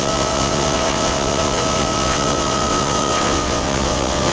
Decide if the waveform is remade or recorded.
remade